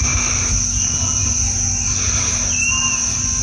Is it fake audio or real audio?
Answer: real